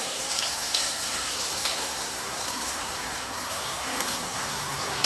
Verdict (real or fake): fake